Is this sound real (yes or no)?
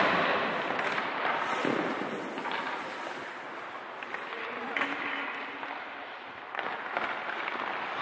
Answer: yes